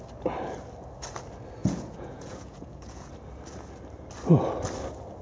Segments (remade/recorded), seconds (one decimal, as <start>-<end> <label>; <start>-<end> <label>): 0.0-1.6 recorded; 1.6-3.1 remade; 3.1-5.2 recorded